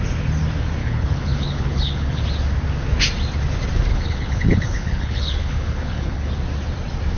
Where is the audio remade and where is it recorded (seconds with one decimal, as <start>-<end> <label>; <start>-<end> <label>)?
0.0-0.8 recorded; 0.8-2.2 remade; 2.2-3.9 recorded; 3.9-6.3 remade; 6.3-7.2 recorded